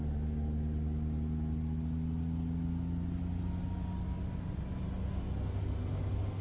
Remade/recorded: recorded